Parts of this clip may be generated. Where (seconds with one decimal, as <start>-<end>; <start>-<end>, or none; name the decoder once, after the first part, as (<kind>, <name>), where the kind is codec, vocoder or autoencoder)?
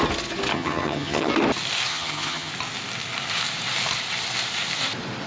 0.5-1.3 (vocoder, HiFi-GAN); 1.9-2.5